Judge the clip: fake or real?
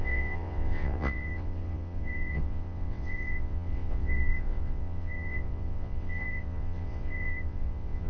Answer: fake